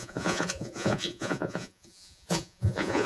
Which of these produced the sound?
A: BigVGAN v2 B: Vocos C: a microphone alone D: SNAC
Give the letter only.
B